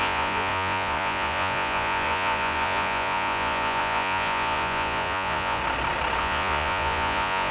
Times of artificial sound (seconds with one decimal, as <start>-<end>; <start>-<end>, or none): 0.0-5.6; 6.2-7.5